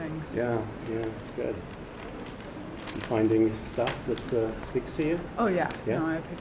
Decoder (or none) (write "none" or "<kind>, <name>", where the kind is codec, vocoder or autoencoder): none